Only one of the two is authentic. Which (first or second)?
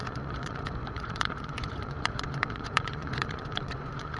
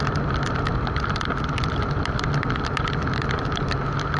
second